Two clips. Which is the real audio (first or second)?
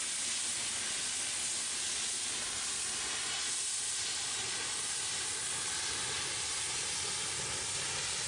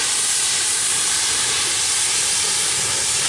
first